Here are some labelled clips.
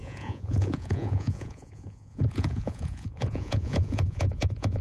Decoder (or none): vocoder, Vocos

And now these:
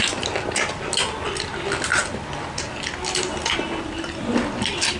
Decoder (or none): none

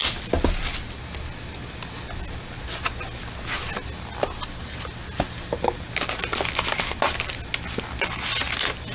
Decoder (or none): none